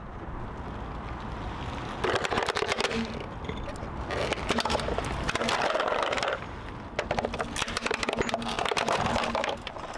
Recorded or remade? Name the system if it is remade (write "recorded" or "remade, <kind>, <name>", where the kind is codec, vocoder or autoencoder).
recorded